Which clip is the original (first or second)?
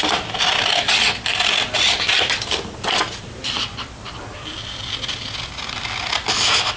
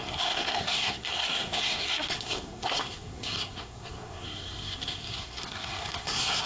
first